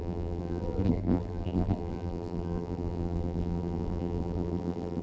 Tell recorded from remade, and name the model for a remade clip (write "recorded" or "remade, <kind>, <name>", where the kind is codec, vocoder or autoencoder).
remade, vocoder, BigVGAN v2